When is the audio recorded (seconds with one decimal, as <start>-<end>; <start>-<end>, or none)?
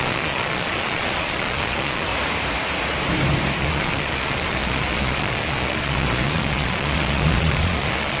2.1-3.6